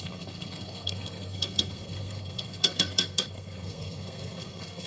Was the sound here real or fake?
fake